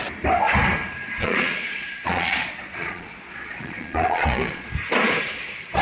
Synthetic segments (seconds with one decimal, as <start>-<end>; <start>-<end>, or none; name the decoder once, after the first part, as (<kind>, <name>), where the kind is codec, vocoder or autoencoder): 1.2-4.7 (vocoder, Vocos)